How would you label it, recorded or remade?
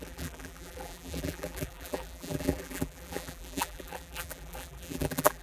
remade